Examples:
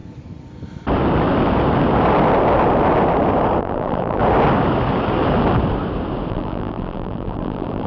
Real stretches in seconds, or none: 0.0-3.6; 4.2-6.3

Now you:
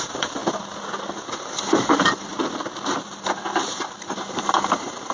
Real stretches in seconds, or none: 0.4-1.1; 2.3-3.0

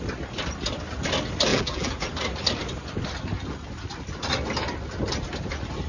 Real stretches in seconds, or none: 0.0-1.5; 2.1-5.9

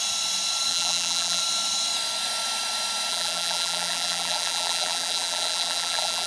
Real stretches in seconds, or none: 0.0-0.7; 1.4-3.1

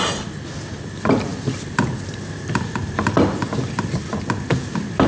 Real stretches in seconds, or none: 0.0-1.3; 4.0-5.1

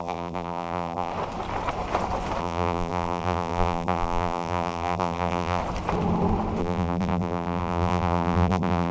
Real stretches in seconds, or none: 1.1-2.4; 5.6-6.6